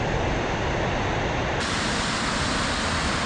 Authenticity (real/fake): real